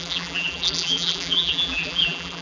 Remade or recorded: remade